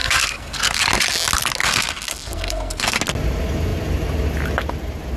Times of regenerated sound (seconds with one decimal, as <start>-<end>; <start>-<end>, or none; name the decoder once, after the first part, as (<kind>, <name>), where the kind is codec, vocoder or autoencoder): 0.0-0.8 (codec, SNAC); 1.6-3.0